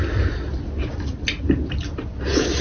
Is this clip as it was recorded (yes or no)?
yes